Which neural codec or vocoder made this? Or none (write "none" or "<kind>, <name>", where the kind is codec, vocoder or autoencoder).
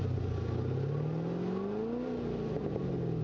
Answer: none